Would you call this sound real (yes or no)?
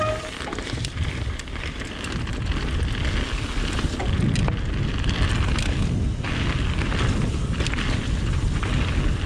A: yes